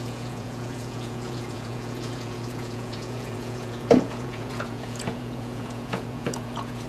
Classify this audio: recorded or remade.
remade